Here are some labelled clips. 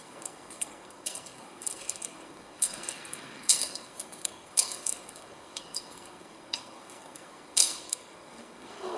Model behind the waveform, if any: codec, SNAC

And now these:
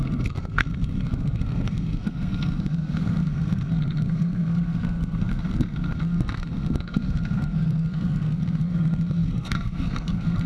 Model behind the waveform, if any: codec, SNAC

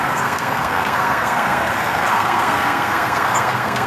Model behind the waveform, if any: codec, SNAC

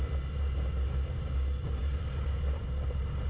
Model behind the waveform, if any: none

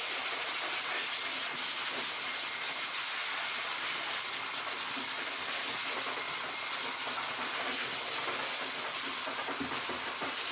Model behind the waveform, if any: none